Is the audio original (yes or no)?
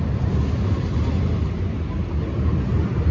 yes